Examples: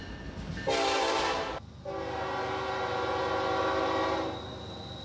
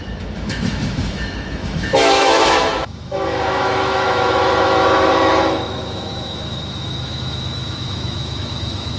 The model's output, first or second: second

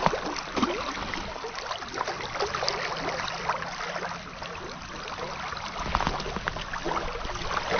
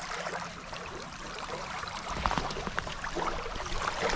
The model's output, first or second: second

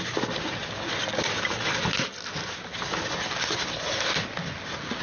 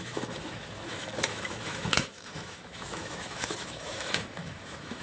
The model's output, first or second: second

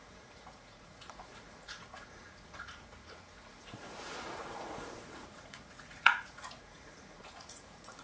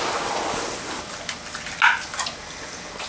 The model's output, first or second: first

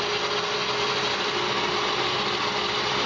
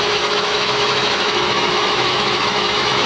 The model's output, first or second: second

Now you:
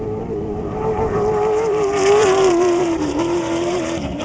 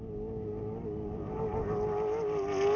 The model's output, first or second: first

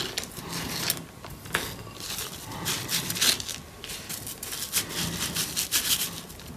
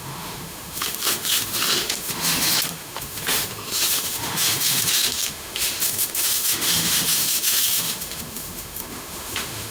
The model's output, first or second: second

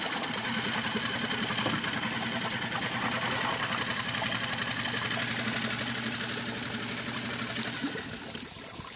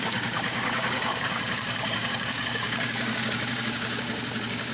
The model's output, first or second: second